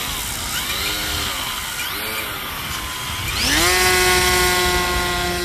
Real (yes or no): yes